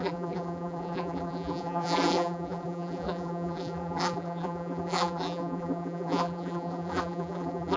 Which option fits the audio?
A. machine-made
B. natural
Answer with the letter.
A